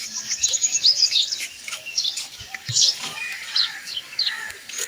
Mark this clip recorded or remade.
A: remade